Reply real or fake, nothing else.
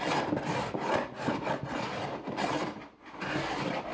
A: real